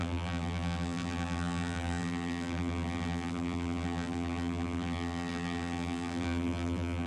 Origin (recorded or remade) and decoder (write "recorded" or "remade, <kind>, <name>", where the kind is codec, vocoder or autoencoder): remade, vocoder, BigVGAN v2